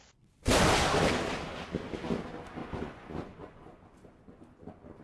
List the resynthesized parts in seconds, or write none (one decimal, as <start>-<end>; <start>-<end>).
2.6-4.6